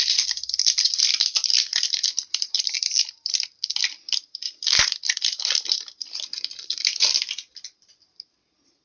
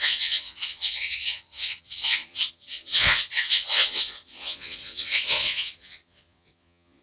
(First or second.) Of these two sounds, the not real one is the second